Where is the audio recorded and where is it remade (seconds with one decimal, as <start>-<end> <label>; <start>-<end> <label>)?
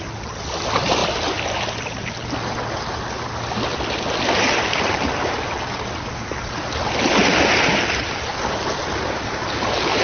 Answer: 0.0-10.0 recorded